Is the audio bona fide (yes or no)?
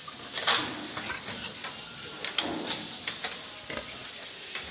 yes